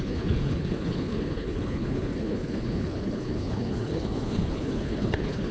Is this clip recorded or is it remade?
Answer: remade